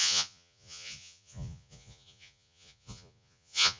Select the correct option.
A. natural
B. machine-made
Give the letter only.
B